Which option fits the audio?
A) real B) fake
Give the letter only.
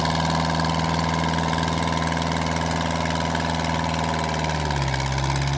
A